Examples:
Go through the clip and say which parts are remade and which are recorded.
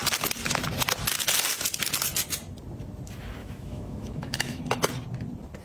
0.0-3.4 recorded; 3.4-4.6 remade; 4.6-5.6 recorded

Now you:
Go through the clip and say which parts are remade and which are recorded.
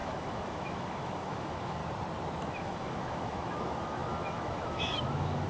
0.0-1.8 remade; 1.8-2.5 recorded; 2.5-5.5 remade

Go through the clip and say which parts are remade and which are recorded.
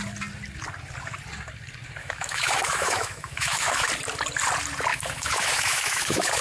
0.0-2.0 recorded; 2.0-3.9 remade; 3.9-4.9 recorded; 4.9-6.4 remade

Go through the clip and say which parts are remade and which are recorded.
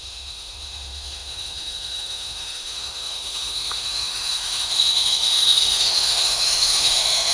0.0-7.3 remade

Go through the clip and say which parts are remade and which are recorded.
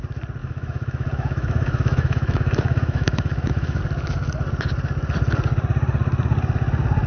0.0-0.4 recorded; 0.4-3.8 remade; 3.8-7.1 recorded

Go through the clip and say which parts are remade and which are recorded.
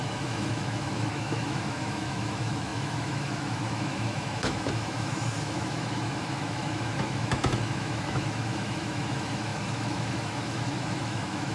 0.0-11.5 remade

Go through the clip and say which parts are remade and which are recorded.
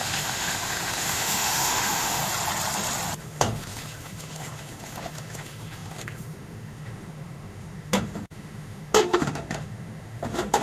0.0-2.2 remade; 2.2-3.2 recorded; 3.2-10.6 remade